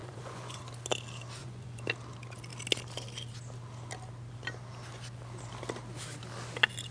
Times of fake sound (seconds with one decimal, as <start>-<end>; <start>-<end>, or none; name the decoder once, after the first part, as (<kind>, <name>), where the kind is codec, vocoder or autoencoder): 0.0-0.6 (vocoder, Vocos); 1.4-1.9